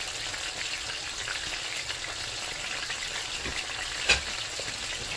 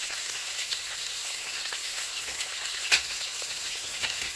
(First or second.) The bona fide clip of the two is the first